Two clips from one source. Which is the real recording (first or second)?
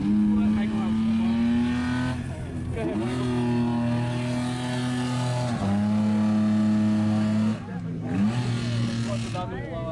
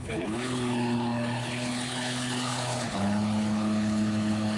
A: first